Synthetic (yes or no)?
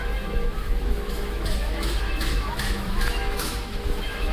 yes